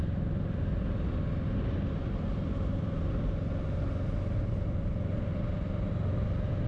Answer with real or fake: real